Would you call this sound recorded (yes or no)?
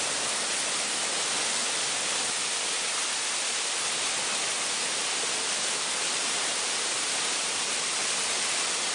yes